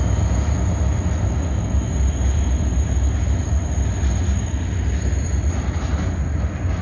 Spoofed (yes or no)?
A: no